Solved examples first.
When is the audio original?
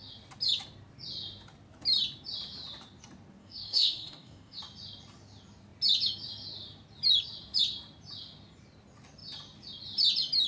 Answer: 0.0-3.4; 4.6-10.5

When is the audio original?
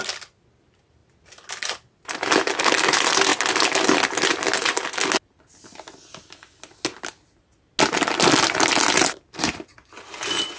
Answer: 0.0-10.6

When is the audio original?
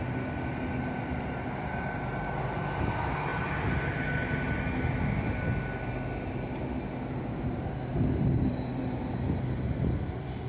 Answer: 0.0-10.5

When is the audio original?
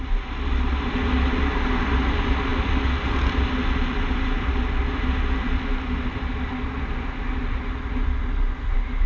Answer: 0.0-9.1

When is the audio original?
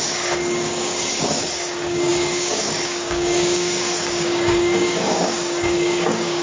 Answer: none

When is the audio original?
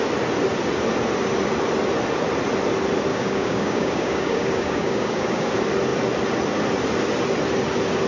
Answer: 0.0-3.1; 5.5-8.1